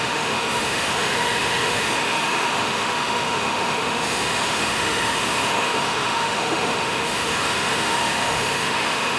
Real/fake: fake